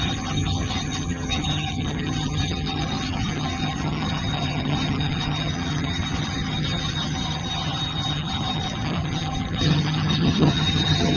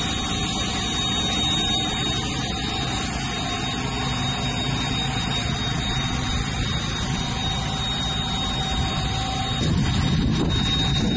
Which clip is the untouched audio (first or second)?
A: second